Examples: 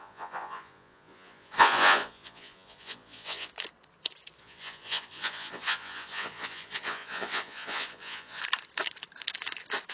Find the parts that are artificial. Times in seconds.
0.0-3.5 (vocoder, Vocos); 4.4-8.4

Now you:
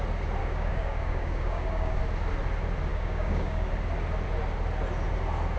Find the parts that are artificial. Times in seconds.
0.4-2.0 (codec, DAC); 2.9-3.7

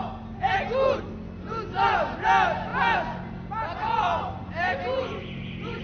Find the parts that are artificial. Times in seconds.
none

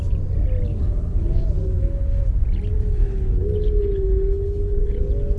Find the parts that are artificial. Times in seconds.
0.7-2.2 (codec, HILCodec); 3.0-5.0

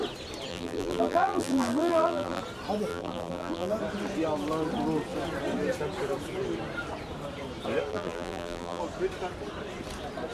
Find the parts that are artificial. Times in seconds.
0.5-2.4 (vocoder, BigVGAN v2); 2.9-3.7; 7.9-8.8

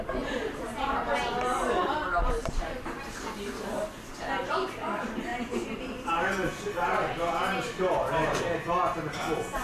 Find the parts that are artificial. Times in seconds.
0.4-3.1 (vocoder, BigVGAN v2); 5.3-8.4

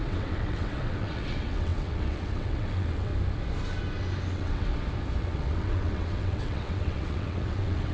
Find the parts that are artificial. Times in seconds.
0.0-3.1 (vocoder, WaveNeXt); 4.3-4.7; 5.2-7.9